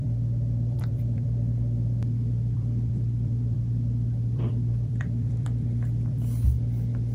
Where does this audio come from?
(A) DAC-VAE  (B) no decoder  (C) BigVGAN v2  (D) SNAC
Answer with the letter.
C